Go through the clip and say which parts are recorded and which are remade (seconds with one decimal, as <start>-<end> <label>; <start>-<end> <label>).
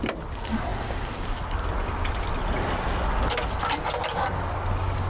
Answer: 0.0-5.1 recorded